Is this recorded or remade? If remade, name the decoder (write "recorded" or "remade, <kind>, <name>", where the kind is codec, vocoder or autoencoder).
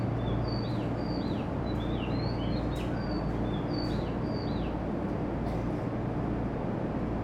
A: recorded